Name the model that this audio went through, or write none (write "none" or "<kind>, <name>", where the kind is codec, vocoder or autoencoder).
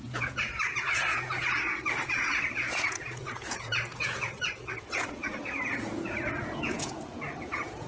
vocoder, Vocos